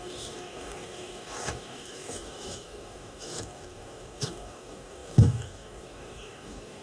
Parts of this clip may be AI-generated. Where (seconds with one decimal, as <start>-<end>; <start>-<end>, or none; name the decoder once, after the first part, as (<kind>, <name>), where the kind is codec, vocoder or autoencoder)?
0.0-6.8 (codec, DAC)